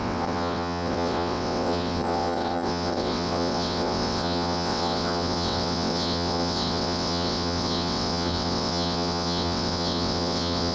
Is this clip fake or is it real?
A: fake